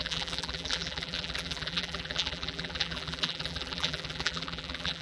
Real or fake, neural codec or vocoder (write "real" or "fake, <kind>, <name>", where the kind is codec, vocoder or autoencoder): fake, vocoder, BigVGAN v2